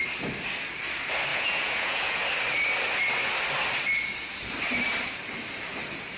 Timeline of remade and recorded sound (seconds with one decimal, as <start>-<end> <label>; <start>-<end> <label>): 0.0-1.3 recorded; 1.3-2.2 remade; 2.2-6.2 recorded